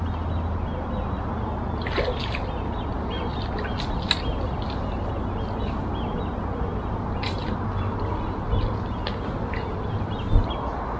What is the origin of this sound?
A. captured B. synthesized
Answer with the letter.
A